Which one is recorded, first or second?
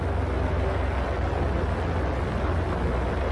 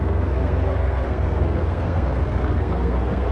first